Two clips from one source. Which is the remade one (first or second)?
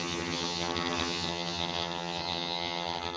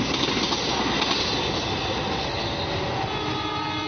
first